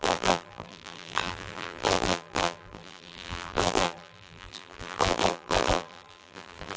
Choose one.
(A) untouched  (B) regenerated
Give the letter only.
B